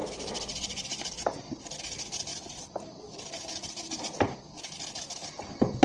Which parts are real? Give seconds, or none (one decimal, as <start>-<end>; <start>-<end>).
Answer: 1.8-2.3; 4.0-5.8